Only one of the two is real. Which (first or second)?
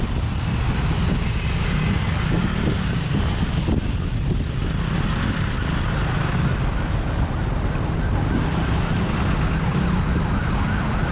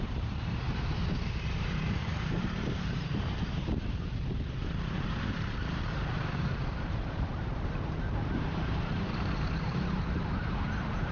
first